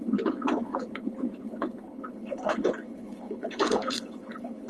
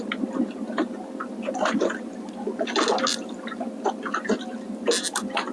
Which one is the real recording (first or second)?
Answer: second